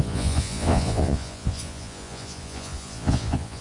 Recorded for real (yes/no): no